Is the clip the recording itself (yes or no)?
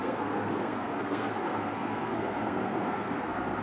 no